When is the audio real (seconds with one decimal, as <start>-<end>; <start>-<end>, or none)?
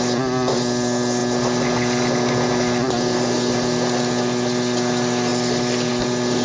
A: 0.0-6.4